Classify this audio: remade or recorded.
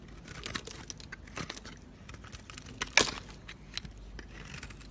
recorded